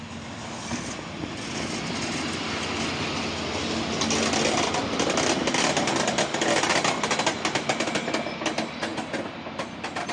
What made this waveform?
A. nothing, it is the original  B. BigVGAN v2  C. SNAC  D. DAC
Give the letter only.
A